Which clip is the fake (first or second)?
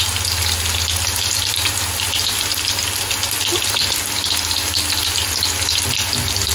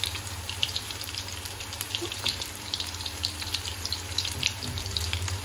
second